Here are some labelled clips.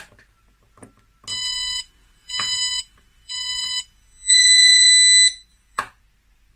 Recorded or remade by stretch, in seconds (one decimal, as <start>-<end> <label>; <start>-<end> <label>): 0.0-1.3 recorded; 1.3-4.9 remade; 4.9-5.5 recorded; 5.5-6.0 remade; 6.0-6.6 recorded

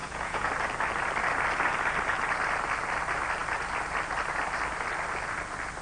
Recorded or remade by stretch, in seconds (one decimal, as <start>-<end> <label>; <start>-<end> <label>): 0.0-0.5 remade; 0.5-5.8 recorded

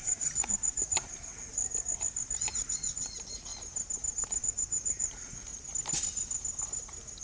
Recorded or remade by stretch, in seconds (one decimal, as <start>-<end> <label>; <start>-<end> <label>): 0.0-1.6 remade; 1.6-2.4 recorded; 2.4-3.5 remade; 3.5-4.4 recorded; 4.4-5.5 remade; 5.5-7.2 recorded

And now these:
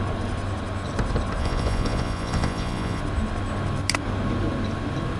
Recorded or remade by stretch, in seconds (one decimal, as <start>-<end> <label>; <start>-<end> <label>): 0.0-1.4 recorded; 1.4-3.0 remade; 3.0-5.2 recorded

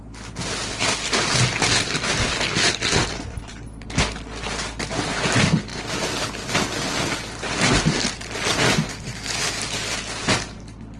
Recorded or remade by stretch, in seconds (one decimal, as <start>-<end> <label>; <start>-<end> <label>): 0.0-11.0 recorded

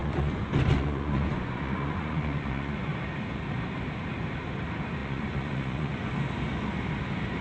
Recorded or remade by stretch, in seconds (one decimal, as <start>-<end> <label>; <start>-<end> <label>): 0.0-2.9 remade; 2.9-5.0 recorded; 5.0-6.1 remade; 6.1-7.4 recorded